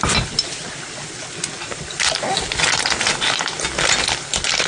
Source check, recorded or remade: recorded